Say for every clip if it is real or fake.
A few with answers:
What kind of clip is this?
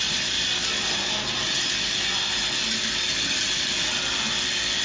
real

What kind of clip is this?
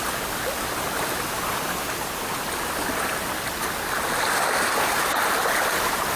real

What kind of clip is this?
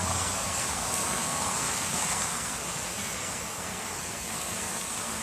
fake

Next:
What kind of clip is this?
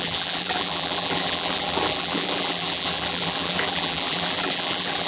fake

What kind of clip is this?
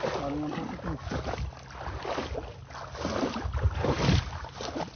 real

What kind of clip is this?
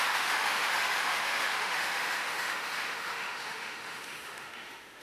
fake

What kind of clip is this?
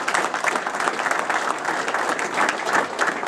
real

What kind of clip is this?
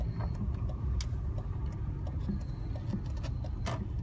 real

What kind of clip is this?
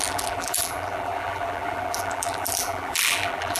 fake